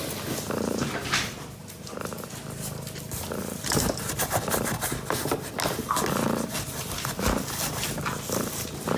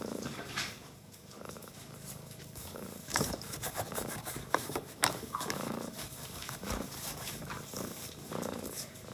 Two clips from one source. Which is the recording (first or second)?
first